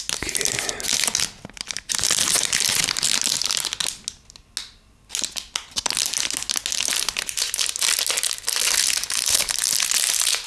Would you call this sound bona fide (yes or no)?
yes